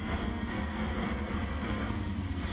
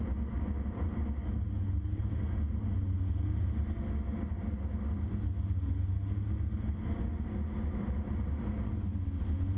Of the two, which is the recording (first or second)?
second